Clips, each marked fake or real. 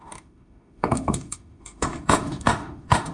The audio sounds fake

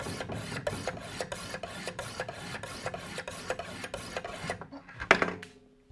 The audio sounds real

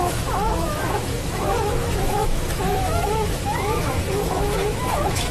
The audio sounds fake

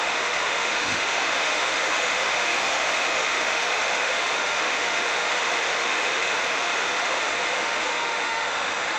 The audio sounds fake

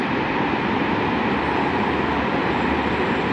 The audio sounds real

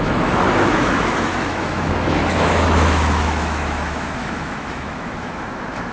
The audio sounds fake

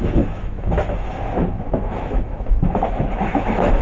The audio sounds fake